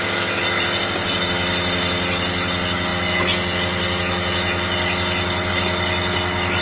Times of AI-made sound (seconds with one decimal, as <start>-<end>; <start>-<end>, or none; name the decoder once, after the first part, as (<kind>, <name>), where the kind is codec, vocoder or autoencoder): none

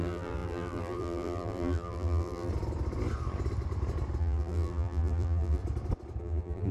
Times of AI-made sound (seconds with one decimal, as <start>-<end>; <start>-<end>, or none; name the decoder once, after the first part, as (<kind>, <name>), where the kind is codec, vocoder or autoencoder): 0.0-2.5 (vocoder, BigVGAN v2); 4.2-5.6; 6.2-6.7

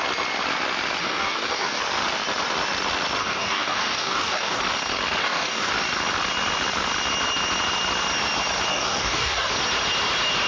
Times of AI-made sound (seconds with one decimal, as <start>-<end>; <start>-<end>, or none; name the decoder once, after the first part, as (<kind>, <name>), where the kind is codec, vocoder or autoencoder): 1.0-1.8 (codec, DAC); 3.2-4.6; 5.2-5.7; 8.7-9.5

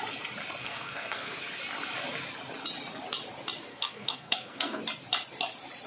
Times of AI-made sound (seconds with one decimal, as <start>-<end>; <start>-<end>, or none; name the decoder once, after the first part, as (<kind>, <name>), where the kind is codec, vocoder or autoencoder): 0.6-1.4 (codec, SNAC); 3.7-4.8

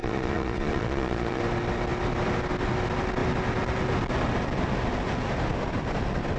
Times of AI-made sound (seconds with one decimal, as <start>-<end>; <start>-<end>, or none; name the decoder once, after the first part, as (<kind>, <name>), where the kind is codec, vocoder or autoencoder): 0.0-1.4 (vocoder, Vocos)

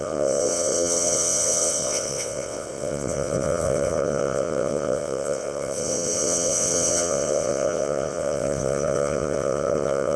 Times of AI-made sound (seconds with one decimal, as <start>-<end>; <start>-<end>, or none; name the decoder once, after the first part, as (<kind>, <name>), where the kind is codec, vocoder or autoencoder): 0.0-10.2 (vocoder, WaveNeXt)

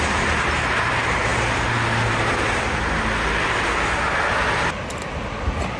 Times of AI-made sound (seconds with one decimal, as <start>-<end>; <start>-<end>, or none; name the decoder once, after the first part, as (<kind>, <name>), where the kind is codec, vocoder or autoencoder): none

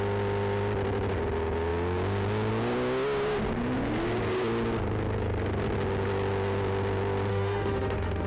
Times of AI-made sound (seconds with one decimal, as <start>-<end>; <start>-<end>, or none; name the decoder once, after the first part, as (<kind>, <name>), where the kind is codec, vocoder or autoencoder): 7.3-8.3 (autoencoder, DAC-VAE)